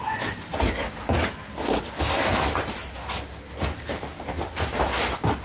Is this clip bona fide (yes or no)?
yes